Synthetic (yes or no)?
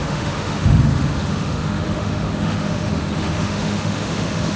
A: yes